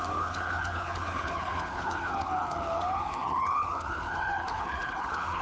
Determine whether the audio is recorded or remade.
remade